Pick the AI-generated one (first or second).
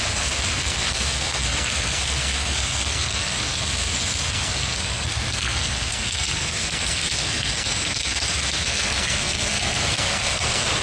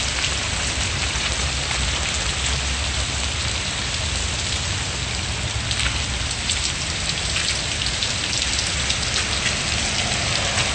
first